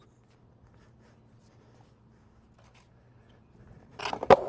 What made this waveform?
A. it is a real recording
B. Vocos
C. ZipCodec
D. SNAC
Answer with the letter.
A